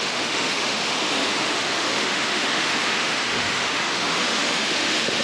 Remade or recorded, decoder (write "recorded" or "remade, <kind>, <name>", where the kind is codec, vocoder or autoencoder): remade, autoencoder, DAC-VAE